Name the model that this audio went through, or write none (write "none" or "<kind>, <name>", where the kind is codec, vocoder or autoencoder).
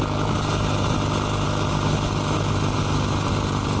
none